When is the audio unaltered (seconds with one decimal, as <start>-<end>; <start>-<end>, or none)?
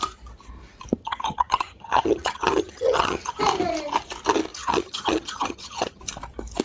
0.0-1.0; 3.4-4.5; 6.0-6.6